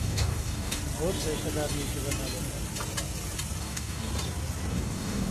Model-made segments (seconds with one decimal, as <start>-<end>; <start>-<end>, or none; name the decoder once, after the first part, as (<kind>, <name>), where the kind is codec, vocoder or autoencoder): 0.0-0.8 (codec, DAC); 3.6-4.1; 4.7-5.3